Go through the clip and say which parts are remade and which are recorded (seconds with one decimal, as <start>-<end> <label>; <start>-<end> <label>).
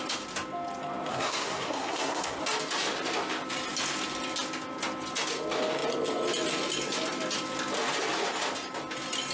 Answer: 0.0-1.1 recorded; 1.1-2.4 remade; 2.4-9.3 recorded